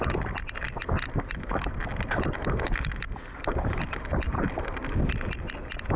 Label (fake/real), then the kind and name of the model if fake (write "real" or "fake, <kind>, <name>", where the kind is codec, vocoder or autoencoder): real